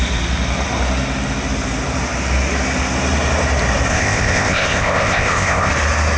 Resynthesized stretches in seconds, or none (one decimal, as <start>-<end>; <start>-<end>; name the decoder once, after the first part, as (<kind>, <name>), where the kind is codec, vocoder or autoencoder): 3.9-5.7 (codec, ZipCodec)